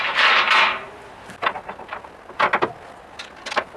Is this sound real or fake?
real